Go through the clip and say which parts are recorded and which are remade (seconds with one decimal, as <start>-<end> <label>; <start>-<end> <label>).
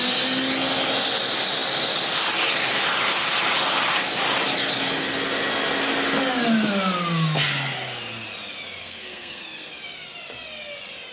0.0-8.8 recorded; 8.8-9.7 remade; 9.7-11.1 recorded